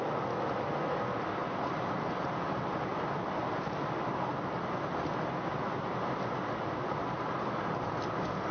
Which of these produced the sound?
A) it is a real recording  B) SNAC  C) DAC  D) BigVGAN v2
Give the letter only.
A